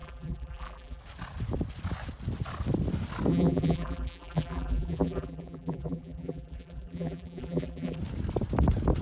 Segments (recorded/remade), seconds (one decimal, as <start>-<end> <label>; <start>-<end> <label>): 0.0-1.0 remade; 1.0-3.3 recorded; 3.3-8.0 remade; 8.0-9.0 recorded